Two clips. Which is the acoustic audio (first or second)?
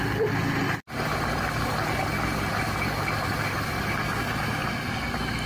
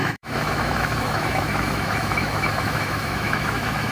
first